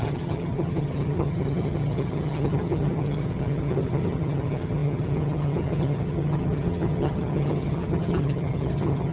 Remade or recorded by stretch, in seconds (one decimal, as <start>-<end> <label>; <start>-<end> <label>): 0.0-9.1 remade